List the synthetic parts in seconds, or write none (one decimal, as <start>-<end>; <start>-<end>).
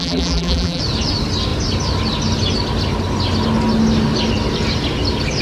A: 0.0-0.8